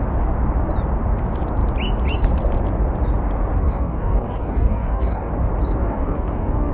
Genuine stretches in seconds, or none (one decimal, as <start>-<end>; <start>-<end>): 0.0-3.6; 5.3-5.8